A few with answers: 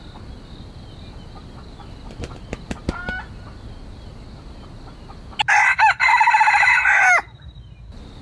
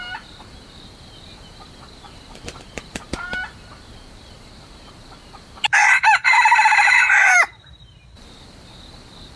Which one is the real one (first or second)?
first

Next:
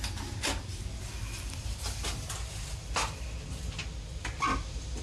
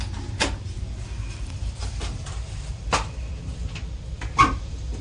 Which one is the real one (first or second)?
first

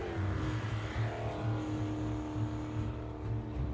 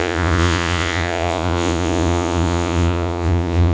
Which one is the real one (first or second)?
first